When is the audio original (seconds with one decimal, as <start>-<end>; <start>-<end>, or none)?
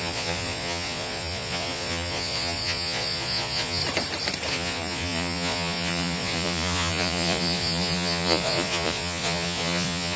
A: 3.8-4.5